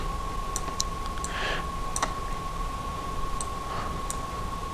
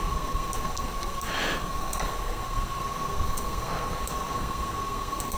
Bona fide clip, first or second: first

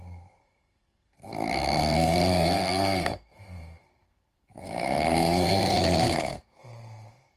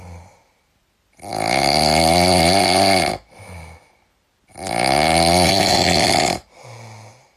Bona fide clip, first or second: second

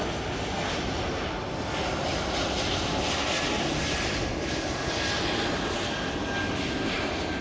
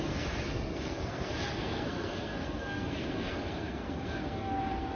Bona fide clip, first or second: first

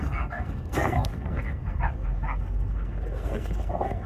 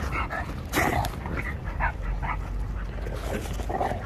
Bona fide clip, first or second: second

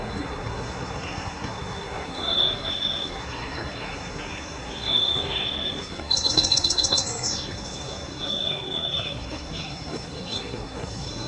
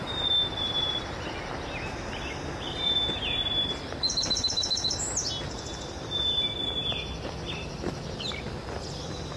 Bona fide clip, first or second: second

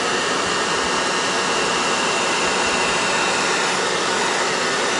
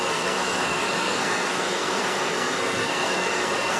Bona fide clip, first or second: first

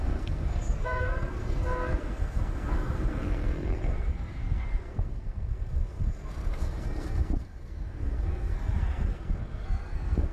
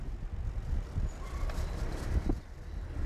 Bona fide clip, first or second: second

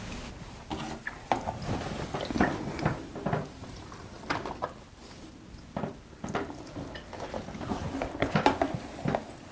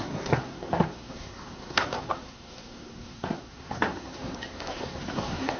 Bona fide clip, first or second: first